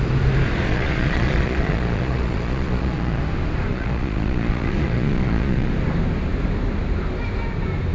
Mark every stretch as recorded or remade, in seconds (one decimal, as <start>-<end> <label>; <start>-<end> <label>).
0.0-0.7 recorded; 0.7-3.2 remade; 3.2-3.7 recorded; 3.7-5.7 remade; 5.7-7.9 recorded